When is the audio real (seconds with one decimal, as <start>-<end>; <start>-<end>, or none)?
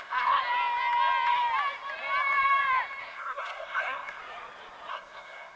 0.4-3.0; 4.2-4.9